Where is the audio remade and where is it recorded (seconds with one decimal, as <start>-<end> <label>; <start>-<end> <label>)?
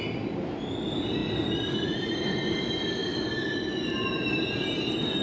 0.0-3.0 recorded; 3.0-3.6 remade; 3.6-5.2 recorded